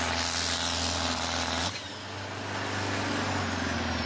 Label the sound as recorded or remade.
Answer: recorded